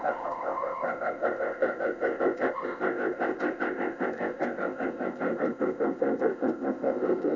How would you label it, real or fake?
fake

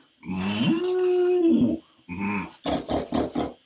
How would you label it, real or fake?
real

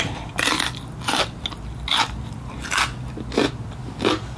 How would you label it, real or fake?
real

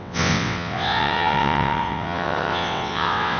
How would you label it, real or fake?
fake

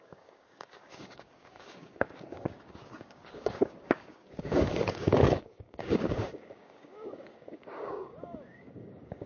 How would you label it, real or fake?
fake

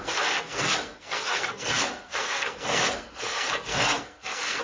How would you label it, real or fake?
fake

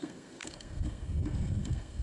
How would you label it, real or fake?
fake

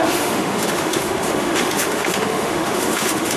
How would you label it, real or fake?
fake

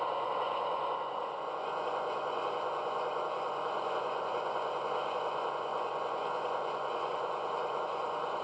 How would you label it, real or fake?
fake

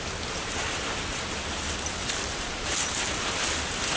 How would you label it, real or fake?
real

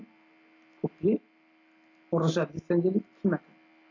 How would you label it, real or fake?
real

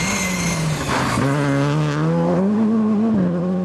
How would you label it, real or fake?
real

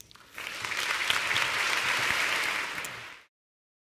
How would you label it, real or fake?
real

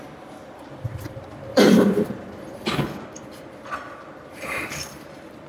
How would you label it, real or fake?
fake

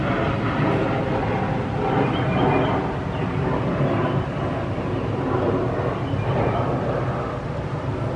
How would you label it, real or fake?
real